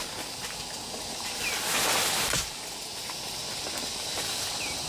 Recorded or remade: recorded